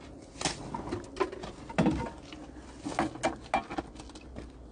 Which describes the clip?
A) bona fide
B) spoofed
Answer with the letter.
A